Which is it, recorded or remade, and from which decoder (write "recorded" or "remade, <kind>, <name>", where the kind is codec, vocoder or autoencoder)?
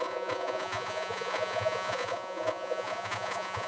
remade, vocoder, Vocos